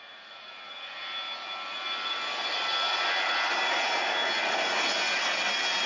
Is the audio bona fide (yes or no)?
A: yes